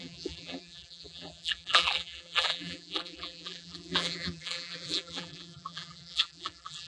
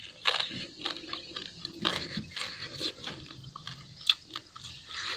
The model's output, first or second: first